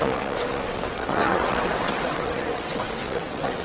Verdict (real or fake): fake